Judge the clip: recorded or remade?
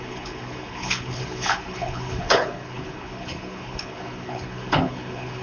remade